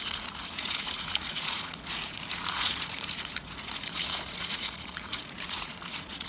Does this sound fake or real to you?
fake